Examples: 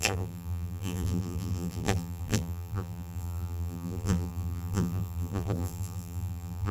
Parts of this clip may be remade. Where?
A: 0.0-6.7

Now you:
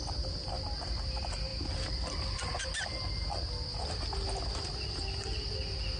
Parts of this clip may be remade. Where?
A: none

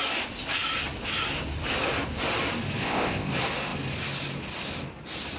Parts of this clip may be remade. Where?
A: 2.8-3.3

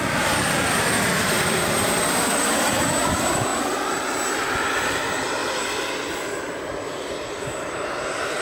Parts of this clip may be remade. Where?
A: 0.0-3.5; 4.9-5.4; 7.6-8.4

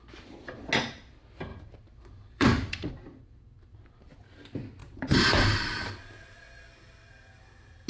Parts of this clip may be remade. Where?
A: 1.5-2.9; 4.8-5.9

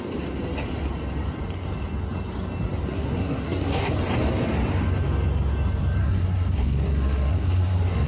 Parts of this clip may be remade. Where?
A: 2.9-3.9; 6.0-8.1

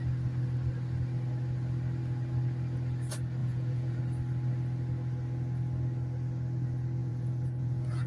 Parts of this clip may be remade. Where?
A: 3.4-4.0; 7.0-8.1

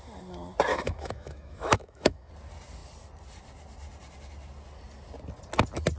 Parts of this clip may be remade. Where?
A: 0.7-2.3